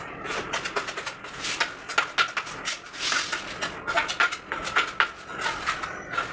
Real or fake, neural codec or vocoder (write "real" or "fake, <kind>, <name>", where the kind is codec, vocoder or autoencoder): real